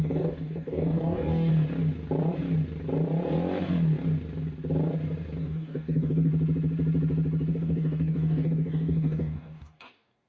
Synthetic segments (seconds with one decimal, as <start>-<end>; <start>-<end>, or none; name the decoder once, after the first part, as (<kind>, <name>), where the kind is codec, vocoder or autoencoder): 0.0-1.5 (codec, DAC); 5.4-6.3; 7.5-10.3

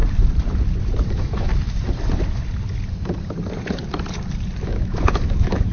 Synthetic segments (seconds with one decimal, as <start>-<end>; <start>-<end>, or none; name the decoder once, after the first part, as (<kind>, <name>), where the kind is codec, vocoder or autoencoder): 1.1-1.5 (autoencoder, DAC-VAE); 4.6-5.7

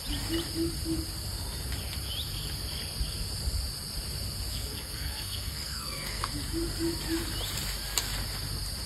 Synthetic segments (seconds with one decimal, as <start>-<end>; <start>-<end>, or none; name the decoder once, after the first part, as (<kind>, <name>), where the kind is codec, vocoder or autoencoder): 4.5-6.3 (codec, SNAC)

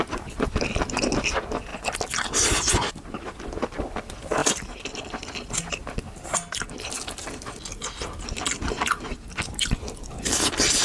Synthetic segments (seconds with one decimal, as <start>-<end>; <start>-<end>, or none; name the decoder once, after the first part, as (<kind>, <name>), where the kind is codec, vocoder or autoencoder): none

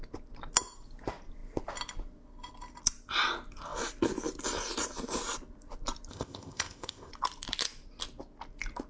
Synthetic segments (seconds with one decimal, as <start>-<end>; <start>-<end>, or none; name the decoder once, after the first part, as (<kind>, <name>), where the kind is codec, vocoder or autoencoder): 6.1-7.1 (codec, ZipCodec)